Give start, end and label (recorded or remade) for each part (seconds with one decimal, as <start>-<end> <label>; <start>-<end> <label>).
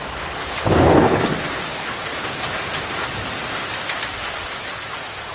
0.0-0.4 recorded; 0.4-1.2 remade; 1.2-5.3 recorded